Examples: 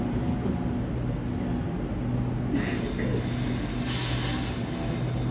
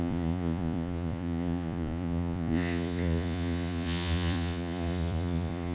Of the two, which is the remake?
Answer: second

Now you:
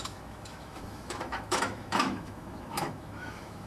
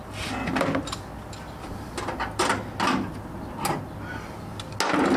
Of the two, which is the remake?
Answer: first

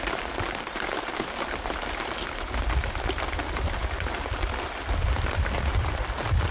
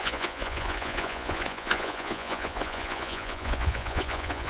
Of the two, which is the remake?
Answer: second